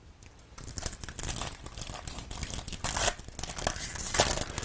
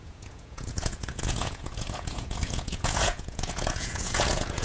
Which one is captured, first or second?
first